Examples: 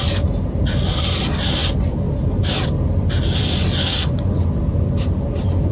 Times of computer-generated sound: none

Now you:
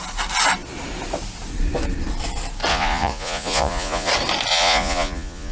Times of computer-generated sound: 2.7-4.1 (vocoder, Vocos); 4.5-5.5